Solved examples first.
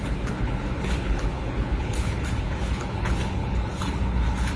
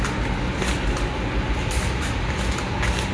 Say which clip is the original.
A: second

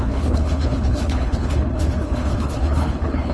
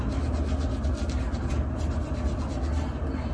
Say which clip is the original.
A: second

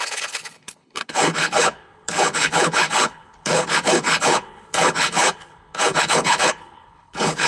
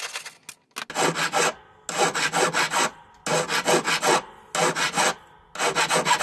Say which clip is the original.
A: second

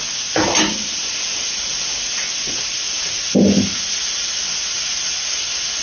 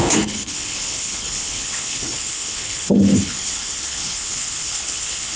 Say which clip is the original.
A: first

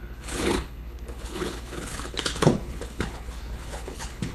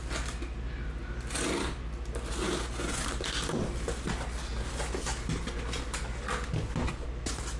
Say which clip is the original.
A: second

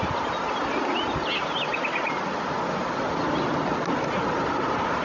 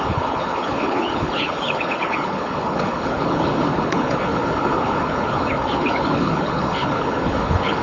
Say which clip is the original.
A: first